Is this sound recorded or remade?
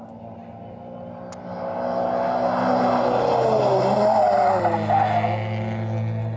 recorded